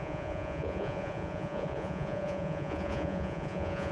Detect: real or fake fake